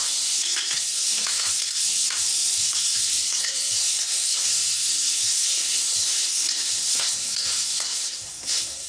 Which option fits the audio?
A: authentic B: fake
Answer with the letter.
B